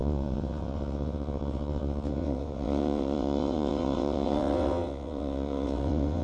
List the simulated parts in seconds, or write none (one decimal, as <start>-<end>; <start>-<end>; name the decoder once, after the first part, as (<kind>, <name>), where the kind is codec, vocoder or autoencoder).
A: 0.0-6.2 (vocoder, WaveNeXt)